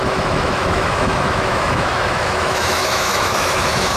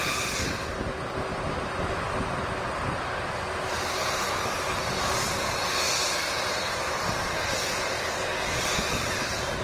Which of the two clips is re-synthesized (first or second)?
first